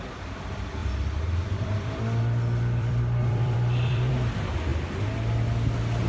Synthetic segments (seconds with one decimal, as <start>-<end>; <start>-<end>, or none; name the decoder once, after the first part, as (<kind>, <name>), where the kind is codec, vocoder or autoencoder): 0.8-4.1 (vocoder, BigVGAN v2)